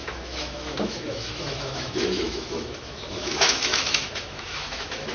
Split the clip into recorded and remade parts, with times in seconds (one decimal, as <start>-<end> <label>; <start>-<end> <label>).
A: 0.0-5.1 remade